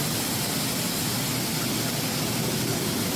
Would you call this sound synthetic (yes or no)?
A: no